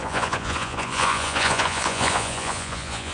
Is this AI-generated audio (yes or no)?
yes